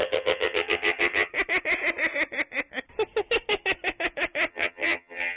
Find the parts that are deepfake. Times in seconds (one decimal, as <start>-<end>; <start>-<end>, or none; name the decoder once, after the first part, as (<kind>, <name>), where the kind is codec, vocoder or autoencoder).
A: 0.0-1.3 (vocoder, HiFi-GAN); 4.5-5.4